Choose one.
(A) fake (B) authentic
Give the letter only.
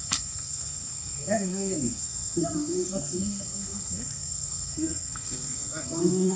A